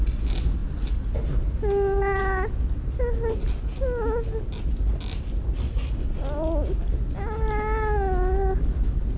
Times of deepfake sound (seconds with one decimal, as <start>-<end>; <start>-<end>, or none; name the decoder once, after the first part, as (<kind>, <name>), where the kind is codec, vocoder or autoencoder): none